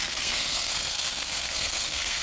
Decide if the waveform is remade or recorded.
remade